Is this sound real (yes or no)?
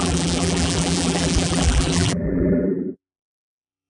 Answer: no